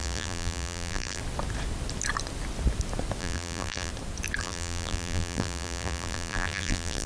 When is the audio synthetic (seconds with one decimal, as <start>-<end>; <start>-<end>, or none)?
0.0-1.2; 3.2-3.9; 4.4-7.1